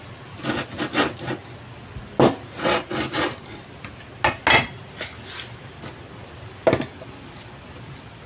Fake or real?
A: real